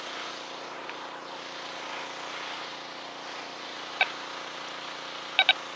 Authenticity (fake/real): real